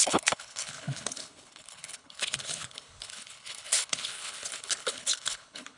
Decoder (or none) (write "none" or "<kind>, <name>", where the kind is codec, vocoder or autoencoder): codec, HILCodec